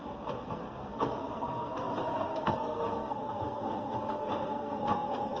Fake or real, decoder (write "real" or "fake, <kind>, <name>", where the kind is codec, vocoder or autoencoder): fake, codec, SNAC